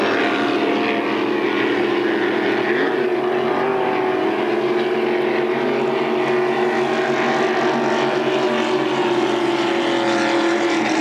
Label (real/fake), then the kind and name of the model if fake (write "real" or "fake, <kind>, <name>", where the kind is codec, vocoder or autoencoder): real